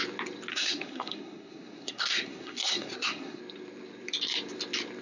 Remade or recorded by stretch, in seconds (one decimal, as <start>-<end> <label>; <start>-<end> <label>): 0.0-0.5 recorded; 0.5-3.4 remade; 3.4-5.0 recorded